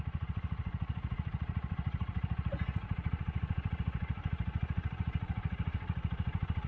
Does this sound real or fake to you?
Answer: fake